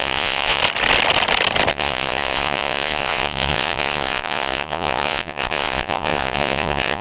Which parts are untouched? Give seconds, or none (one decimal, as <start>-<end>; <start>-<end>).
0.6-1.7